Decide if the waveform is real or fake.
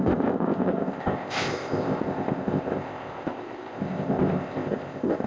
fake